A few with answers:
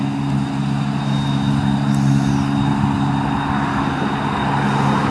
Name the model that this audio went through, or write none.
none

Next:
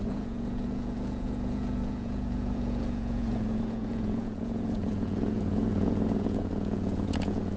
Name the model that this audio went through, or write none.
vocoder, Vocos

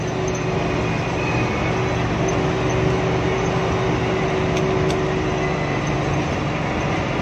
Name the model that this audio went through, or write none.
none